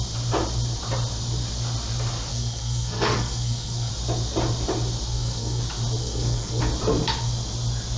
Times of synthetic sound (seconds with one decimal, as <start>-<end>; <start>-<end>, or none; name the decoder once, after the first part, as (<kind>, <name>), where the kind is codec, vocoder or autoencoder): 2.3-3.9 (codec, SNAC); 5.1-5.6; 6.0-6.6